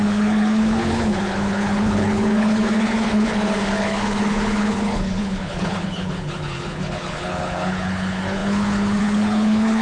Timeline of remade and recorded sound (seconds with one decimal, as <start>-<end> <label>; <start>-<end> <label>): 0.0-9.8 remade